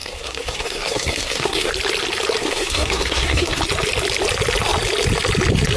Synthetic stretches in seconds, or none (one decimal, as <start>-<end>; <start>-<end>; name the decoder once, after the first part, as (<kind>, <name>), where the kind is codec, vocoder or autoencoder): 0.0-1.7 (codec, SNAC); 2.4-3.6